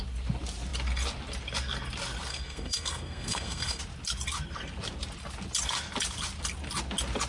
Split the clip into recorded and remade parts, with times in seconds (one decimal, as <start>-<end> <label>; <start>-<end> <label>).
0.0-2.3 recorded; 2.3-3.8 remade; 3.8-7.3 recorded